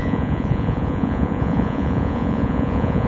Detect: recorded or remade remade